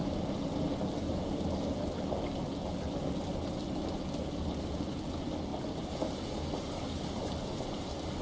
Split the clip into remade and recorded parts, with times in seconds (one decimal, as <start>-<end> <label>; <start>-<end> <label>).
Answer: 0.0-8.2 recorded